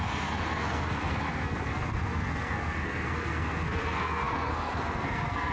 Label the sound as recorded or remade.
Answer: remade